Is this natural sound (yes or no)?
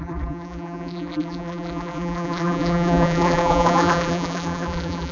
no